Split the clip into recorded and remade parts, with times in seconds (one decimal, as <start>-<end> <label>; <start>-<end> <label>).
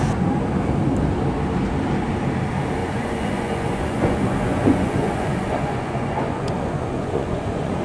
0.0-2.8 recorded; 2.8-7.8 remade